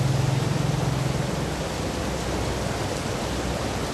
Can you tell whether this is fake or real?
real